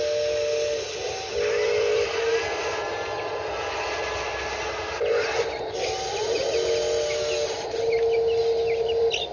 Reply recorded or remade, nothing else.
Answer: recorded